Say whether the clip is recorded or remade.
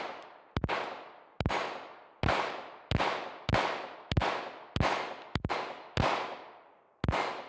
recorded